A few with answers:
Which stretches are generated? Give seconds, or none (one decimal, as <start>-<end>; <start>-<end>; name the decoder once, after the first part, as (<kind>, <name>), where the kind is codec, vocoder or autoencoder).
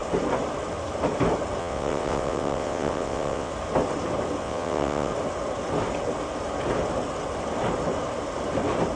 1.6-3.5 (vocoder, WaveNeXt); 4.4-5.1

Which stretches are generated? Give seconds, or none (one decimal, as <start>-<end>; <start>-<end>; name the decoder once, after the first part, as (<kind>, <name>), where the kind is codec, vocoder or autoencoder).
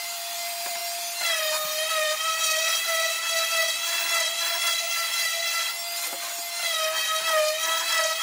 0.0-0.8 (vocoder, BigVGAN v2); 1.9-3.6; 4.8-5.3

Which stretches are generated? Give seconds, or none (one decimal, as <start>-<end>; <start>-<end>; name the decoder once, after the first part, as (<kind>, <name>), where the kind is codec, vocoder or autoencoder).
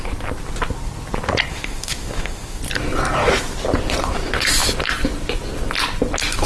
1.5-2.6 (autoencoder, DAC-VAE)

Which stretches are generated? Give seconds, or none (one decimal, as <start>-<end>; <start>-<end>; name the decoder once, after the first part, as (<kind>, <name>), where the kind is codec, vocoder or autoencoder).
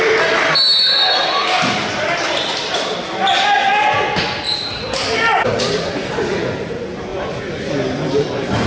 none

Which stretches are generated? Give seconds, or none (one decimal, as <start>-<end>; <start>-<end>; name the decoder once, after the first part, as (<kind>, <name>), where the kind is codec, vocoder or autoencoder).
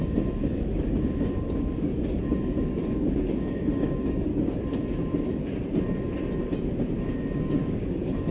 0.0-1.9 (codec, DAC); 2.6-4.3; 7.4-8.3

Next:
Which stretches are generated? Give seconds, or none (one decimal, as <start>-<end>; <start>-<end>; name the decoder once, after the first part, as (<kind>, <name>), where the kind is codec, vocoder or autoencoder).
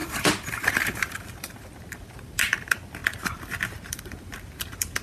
0.0-3.0 (vocoder, BigVGAN v2); 3.9-5.0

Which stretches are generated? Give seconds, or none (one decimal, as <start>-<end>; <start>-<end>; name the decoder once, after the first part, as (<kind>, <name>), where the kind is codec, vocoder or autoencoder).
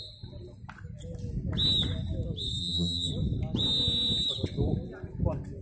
2.6-3.1 (vocoder, HiFi-GAN)